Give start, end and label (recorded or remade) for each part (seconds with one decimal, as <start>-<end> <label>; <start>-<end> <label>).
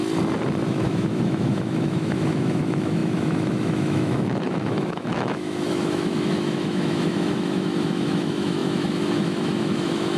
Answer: 0.0-0.7 recorded; 0.7-10.2 remade